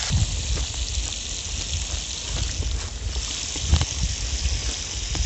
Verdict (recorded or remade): recorded